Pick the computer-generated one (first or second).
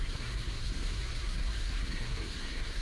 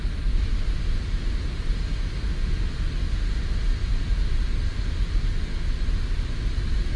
first